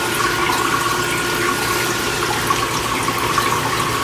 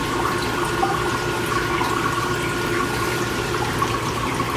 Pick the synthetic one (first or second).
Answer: second